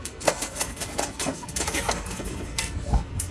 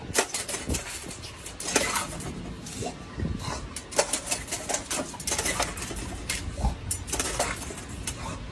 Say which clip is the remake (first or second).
first